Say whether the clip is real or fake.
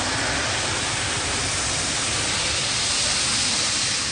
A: real